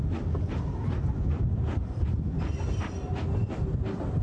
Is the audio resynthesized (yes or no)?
no